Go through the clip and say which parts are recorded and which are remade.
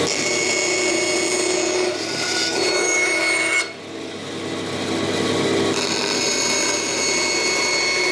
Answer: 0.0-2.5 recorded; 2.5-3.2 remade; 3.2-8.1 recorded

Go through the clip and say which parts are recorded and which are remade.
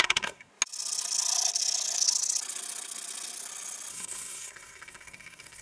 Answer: 0.0-0.5 remade; 0.5-3.9 recorded; 3.9-5.6 remade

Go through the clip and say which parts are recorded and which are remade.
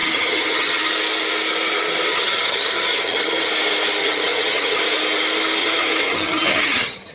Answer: 0.0-0.9 remade; 0.9-2.1 recorded; 2.1-3.5 remade; 3.5-4.0 recorded; 4.0-4.8 remade; 4.8-5.6 recorded; 5.6-7.1 remade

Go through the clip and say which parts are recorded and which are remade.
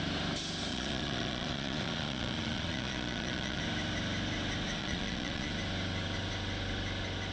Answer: 0.0-0.7 recorded; 0.7-3.6 remade; 3.6-4.8 recorded; 4.8-5.5 remade; 5.5-7.3 recorded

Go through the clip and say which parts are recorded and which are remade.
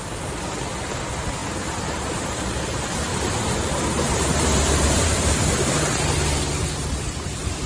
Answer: 0.0-1.4 recorded; 1.4-2.6 remade; 2.6-3.1 recorded; 3.1-6.0 remade; 6.0-7.7 recorded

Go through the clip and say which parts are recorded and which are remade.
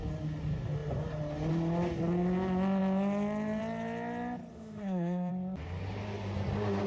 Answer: 0.0-4.5 recorded; 4.5-5.3 remade; 5.3-6.9 recorded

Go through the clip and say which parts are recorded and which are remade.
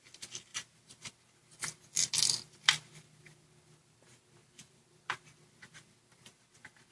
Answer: 0.0-0.5 recorded; 0.5-1.1 remade; 1.1-3.8 recorded; 3.8-6.9 remade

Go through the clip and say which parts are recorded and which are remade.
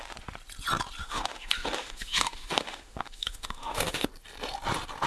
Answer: 0.0-1.0 recorded; 1.0-4.1 remade; 4.1-5.1 recorded